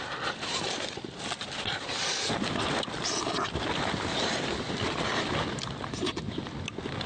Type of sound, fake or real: real